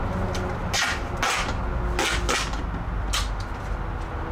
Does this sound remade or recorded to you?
recorded